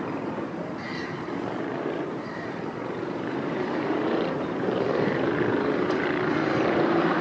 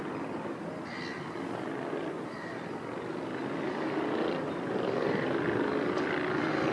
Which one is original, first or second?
second